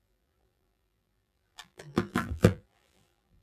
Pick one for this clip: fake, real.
fake